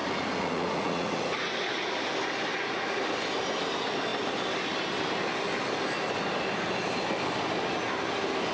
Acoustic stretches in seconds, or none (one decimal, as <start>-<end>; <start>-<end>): 1.9-2.5; 3.0-8.5